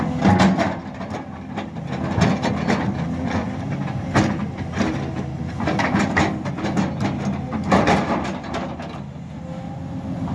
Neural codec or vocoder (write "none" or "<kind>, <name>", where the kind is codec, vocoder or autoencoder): none